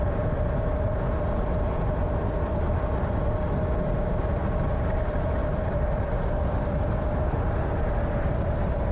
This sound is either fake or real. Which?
real